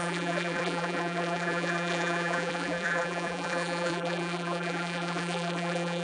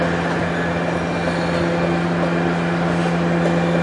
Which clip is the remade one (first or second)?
first